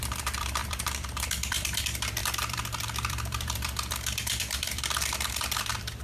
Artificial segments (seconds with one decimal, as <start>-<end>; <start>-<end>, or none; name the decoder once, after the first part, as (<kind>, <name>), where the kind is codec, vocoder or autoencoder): 0.0-6.0 (vocoder, BigVGAN v2)